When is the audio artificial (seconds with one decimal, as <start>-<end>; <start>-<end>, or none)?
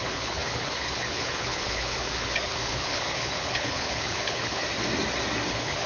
0.0-4.6; 5.5-5.9